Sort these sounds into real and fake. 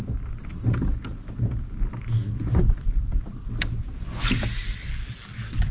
real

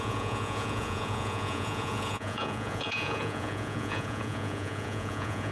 fake